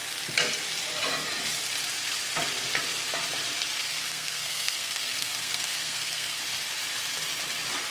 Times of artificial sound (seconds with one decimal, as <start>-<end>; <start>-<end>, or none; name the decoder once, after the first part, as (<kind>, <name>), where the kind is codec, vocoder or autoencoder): 3.9-6.4 (codec, SNAC)